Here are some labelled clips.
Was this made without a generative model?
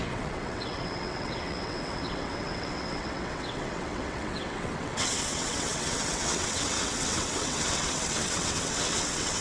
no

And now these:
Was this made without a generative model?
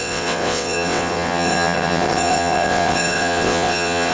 no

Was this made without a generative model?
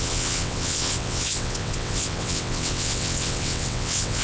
no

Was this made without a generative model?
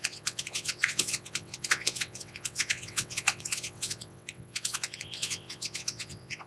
no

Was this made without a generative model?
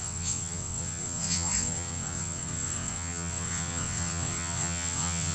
no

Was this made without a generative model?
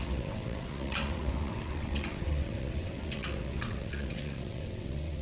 no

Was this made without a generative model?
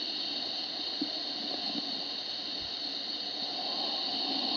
yes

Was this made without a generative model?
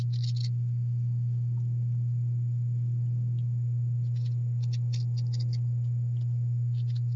yes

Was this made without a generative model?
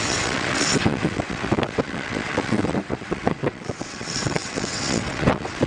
no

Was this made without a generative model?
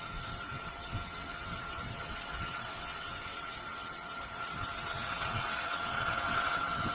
no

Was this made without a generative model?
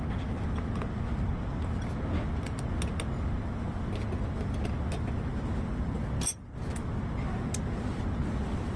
yes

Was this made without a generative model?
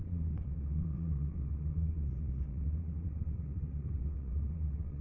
no